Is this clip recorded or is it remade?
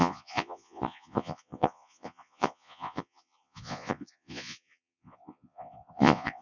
remade